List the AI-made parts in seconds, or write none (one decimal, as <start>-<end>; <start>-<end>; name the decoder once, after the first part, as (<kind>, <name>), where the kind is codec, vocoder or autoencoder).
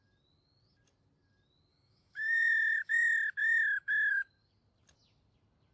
1.7-3.0 (autoencoder, DAC-VAE); 3.4-4.1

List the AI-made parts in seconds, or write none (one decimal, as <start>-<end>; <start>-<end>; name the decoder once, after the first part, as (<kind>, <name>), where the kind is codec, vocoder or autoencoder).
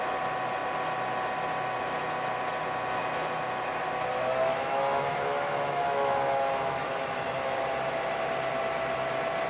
4.5-7.6 (autoencoder, DAC-VAE)